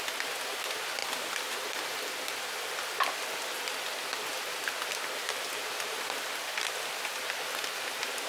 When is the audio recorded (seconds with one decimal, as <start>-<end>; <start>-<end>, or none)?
0.0-8.3

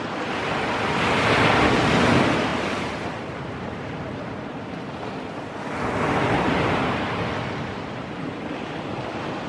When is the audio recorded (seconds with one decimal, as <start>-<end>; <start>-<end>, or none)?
0.0-2.5; 5.6-9.5